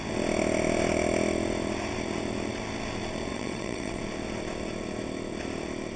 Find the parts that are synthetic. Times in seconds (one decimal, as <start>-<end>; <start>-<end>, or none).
3.3-4.0